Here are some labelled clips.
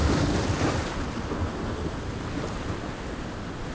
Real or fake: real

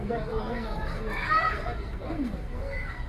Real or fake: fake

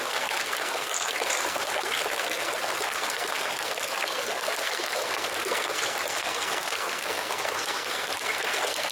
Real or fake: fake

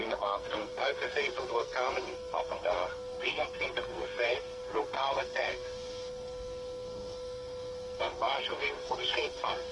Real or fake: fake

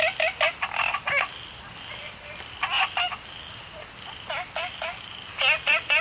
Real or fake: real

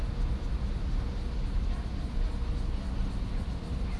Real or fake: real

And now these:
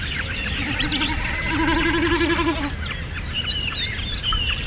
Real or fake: real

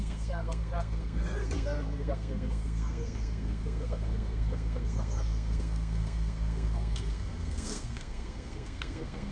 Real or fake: fake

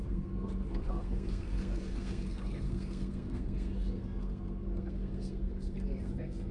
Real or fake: fake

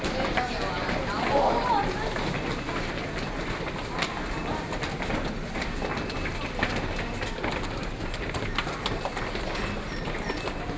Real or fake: real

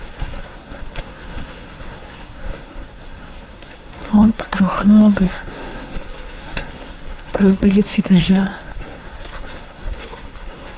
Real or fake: fake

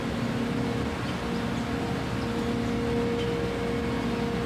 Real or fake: real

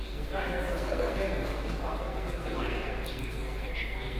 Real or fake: fake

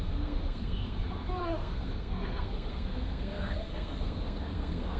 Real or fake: fake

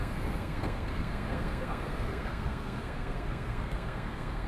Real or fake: fake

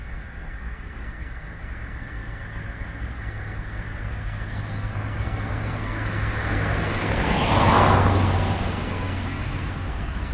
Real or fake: fake